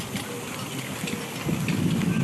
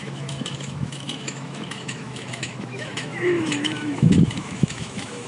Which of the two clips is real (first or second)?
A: first